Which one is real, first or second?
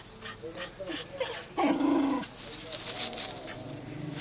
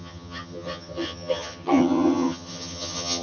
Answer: first